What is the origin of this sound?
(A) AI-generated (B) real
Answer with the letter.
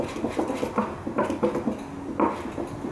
B